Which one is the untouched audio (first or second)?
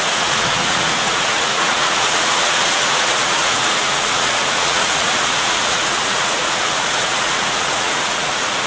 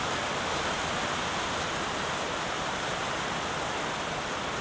second